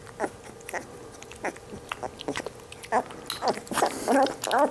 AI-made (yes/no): no